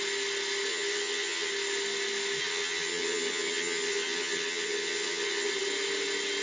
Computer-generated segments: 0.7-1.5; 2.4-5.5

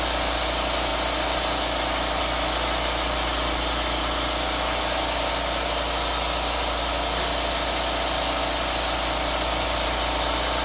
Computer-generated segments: none

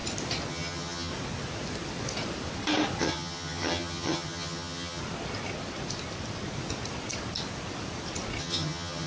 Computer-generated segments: 0.5-1.1; 3.0-5.0; 8.4-9.1

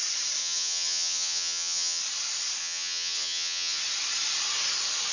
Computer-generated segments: 0.4-2.0; 2.6-3.8

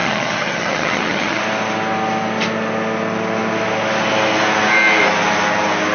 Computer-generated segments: 0.0-1.4

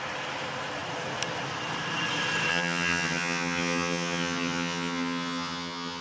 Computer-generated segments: 2.5-6.0